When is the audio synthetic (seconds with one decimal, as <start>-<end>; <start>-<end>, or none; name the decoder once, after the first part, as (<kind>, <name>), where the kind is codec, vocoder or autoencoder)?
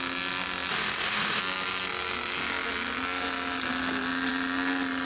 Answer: 0.7-1.4 (autoencoder, DAC-VAE)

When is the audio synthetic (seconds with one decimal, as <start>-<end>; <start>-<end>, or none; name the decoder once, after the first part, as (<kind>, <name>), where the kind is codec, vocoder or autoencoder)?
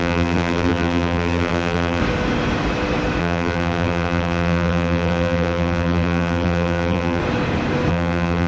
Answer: 0.0-2.0 (vocoder, BigVGAN v2); 3.2-7.2; 7.9-8.5